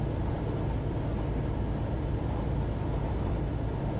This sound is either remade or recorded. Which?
recorded